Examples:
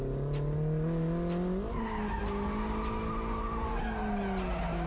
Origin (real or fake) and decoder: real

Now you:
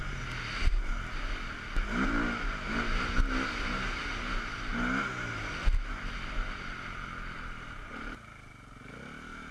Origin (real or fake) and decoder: real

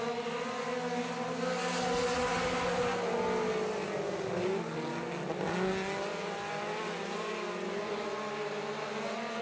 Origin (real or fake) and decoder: real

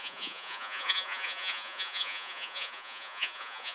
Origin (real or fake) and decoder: fake, vocoder, Vocos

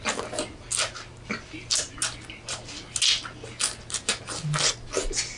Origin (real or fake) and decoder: real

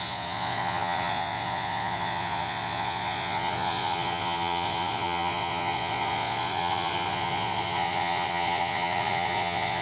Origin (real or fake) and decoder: fake, vocoder, Vocos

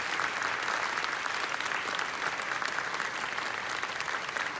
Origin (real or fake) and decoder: real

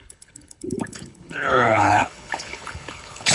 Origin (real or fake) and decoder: fake, codec, HILCodec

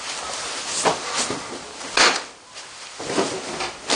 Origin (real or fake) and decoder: real